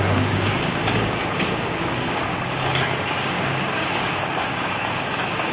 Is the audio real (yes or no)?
no